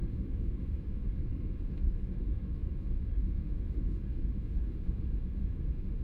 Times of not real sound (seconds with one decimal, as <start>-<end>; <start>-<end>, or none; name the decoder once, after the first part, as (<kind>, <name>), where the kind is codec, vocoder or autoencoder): 0.0-6.0 (autoencoder, DAC-VAE)